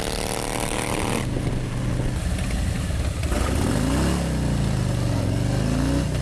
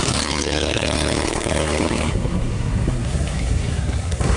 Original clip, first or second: first